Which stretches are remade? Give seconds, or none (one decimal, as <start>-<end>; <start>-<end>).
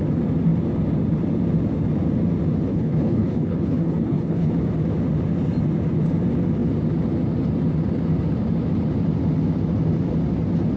2.7-4.5